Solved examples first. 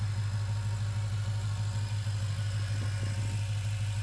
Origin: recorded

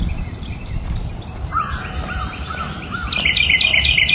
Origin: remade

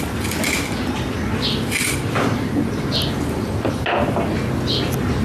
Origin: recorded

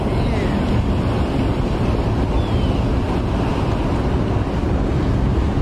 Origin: recorded